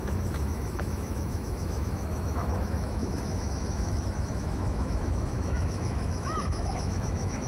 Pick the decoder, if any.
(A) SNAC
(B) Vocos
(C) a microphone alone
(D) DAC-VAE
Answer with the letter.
D